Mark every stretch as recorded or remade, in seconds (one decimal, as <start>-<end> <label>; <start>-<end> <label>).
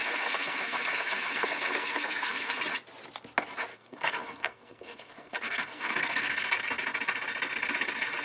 0.0-2.6 remade; 2.6-3.7 recorded; 3.7-6.6 remade; 6.6-8.2 recorded